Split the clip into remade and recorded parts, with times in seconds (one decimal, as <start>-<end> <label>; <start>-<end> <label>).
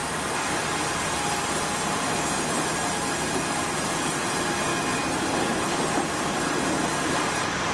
0.0-1.7 recorded; 1.7-2.7 remade; 2.7-3.5 recorded; 3.5-4.7 remade; 4.7-7.0 recorded; 7.0-7.7 remade